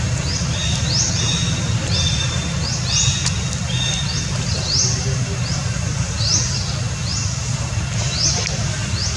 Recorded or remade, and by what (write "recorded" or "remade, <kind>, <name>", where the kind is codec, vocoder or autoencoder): recorded